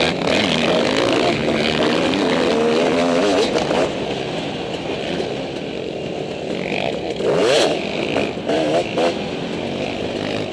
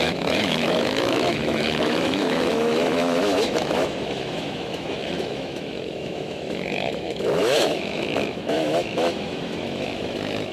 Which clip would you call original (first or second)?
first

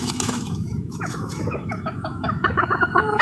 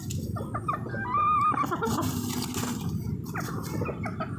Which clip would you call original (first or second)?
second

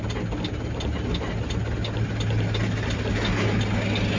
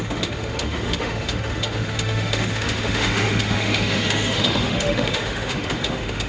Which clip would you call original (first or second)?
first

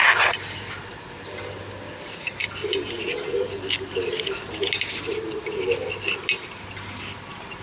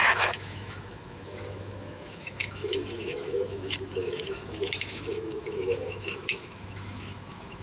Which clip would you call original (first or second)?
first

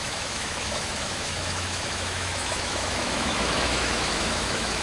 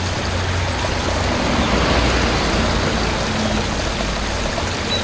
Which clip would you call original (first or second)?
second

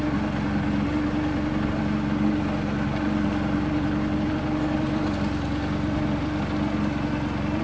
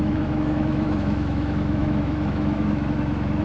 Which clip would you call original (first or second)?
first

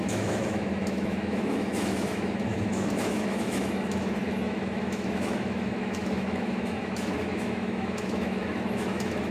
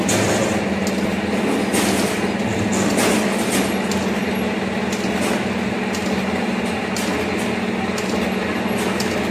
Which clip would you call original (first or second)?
second